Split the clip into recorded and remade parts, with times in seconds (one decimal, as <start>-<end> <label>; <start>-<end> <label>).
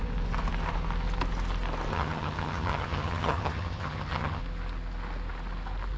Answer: 0.0-1.9 recorded; 1.9-4.4 remade; 4.4-6.0 recorded